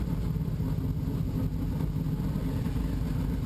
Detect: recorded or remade recorded